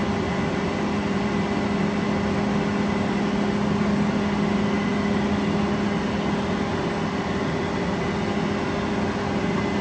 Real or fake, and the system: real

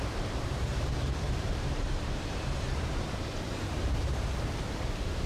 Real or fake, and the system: fake, vocoder, BigVGAN v2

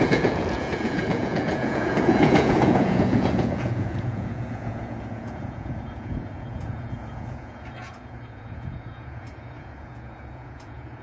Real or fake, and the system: fake, vocoder, Vocos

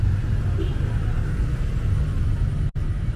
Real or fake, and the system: real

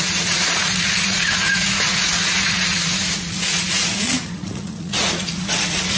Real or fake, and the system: fake, vocoder, Vocos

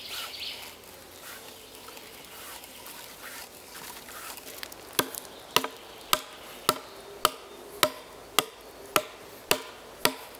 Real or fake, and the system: real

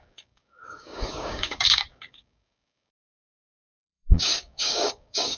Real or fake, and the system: fake, codec, DAC